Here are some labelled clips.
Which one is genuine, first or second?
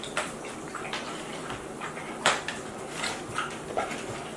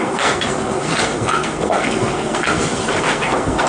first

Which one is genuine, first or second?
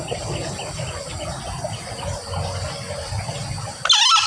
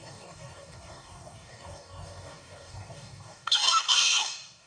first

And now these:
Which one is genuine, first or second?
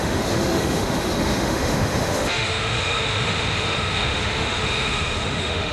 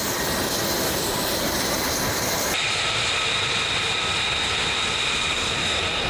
second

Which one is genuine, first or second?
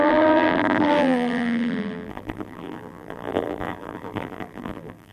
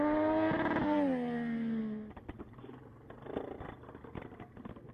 second